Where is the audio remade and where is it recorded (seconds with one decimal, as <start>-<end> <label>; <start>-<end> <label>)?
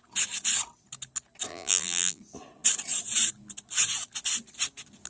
0.0-1.5 recorded; 1.5-2.2 remade; 2.2-5.1 recorded